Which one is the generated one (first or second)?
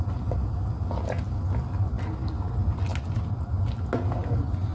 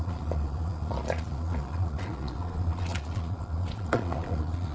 second